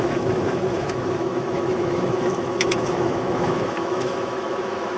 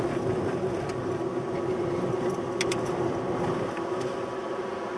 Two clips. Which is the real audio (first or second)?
second